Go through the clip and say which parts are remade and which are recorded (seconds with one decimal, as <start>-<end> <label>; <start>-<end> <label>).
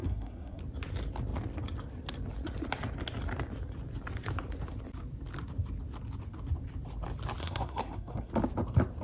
0.0-0.6 remade; 0.6-7.4 recorded; 7.4-8.3 remade; 8.3-9.0 recorded